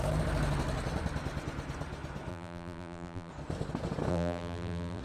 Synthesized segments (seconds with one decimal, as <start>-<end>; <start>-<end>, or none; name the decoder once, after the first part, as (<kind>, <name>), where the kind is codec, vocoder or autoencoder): 2.3-3.3 (vocoder, BigVGAN v2); 4.1-5.0

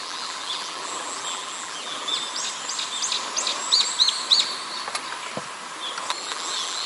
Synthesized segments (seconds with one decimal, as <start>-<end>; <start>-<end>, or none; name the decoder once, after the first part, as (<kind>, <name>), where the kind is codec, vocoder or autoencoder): 0.0-2.1 (vocoder, BigVGAN v2); 6.2-6.9

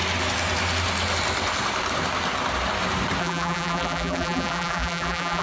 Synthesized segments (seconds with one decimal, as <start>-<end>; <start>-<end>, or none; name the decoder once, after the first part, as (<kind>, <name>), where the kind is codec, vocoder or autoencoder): 3.2-5.4 (vocoder, BigVGAN v2)

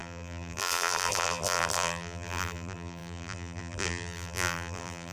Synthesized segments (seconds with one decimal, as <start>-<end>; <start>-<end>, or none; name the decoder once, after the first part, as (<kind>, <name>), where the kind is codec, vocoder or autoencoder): 0.0-5.1 (vocoder, BigVGAN v2)

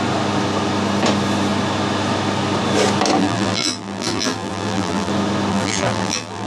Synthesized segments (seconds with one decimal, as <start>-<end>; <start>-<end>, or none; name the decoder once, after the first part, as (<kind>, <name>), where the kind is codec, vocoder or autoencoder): 3.2-5.1 (vocoder, BigVGAN v2); 5.5-6.5

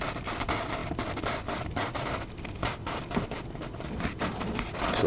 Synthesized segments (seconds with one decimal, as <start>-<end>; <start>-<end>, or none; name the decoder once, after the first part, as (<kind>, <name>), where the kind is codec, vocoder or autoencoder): none

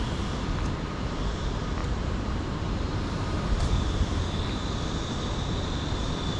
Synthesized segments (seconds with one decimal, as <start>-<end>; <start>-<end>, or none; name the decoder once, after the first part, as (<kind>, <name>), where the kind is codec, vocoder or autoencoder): 1.8-4.2 (vocoder, BigVGAN v2)

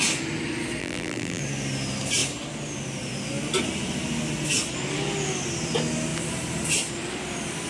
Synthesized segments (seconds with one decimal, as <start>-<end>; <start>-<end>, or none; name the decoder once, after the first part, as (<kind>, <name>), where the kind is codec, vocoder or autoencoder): 0.8-1.4 (vocoder, BigVGAN v2)